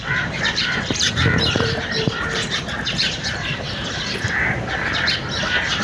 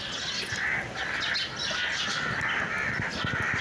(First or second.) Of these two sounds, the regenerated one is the first